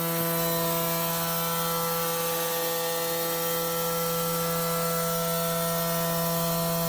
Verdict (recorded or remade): recorded